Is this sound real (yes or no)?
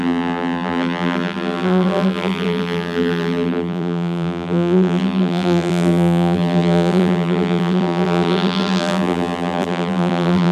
no